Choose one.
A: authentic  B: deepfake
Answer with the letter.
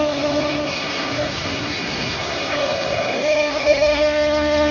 B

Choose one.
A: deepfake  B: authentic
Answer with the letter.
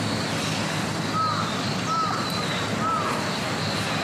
B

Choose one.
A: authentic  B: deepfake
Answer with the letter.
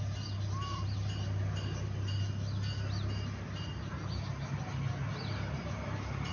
A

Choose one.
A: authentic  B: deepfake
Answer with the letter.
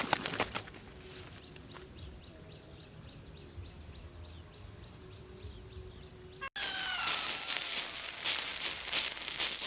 A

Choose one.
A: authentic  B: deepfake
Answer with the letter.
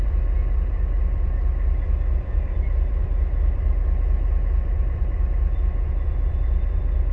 B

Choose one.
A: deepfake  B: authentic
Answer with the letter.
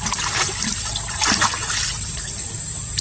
A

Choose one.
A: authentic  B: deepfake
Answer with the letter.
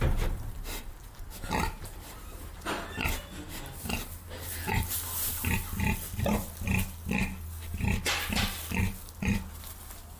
A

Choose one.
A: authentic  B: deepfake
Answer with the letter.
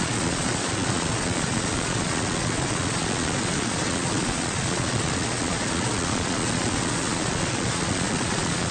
B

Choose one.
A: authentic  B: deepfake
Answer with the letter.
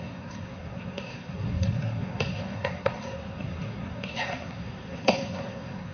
B